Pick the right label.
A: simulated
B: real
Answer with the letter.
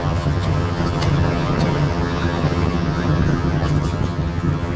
A